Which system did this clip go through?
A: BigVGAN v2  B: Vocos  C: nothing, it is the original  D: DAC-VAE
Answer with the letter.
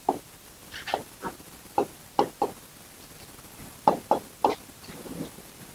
A